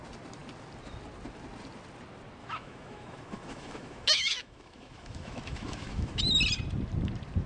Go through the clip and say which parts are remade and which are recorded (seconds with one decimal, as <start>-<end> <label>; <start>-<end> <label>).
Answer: 0.0-2.4 recorded; 2.4-6.2 remade; 6.2-7.5 recorded